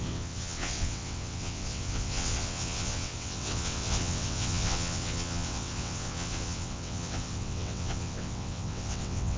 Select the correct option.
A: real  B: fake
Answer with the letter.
B